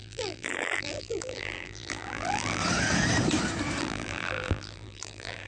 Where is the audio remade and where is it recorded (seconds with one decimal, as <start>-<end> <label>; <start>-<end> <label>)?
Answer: 0.0-2.6 remade; 2.6-3.8 recorded; 3.8-5.5 remade